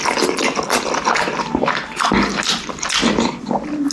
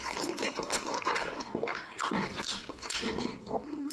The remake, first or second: second